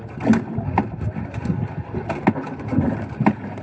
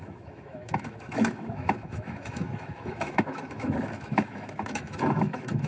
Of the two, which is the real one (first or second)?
first